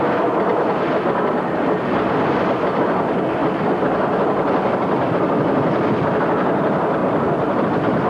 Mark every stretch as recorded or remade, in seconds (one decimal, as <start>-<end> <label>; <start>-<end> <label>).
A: 0.0-3.4 recorded; 3.4-5.2 remade; 5.2-7.0 recorded; 7.0-7.6 remade; 7.6-8.1 recorded